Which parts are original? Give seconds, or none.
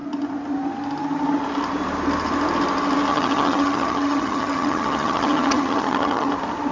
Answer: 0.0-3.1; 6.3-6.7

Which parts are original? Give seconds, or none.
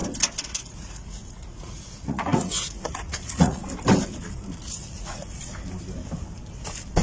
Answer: 0.0-0.7; 3.6-4.6; 5.4-7.0